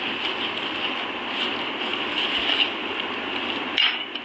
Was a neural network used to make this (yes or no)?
no